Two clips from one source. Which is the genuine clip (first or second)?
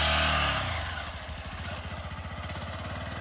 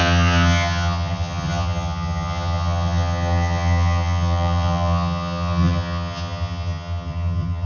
first